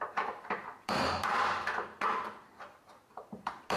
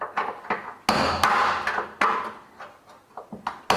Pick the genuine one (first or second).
second